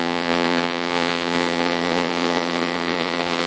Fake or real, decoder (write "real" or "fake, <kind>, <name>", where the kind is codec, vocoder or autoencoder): fake, vocoder, Vocos